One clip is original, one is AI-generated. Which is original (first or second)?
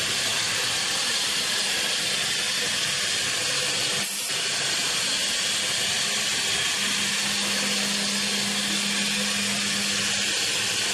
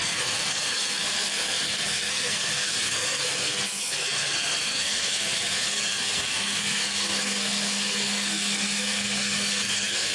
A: first